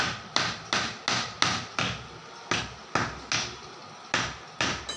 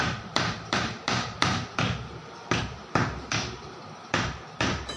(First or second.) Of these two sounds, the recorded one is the first